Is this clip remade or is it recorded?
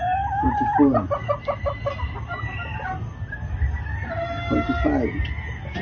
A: recorded